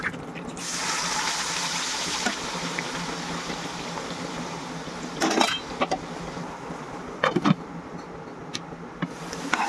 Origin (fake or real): real